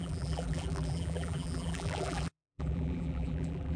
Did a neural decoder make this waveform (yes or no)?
yes